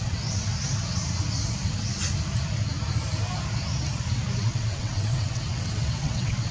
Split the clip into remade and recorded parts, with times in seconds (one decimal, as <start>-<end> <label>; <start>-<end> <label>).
0.0-0.5 remade; 0.5-4.4 recorded; 4.4-6.5 remade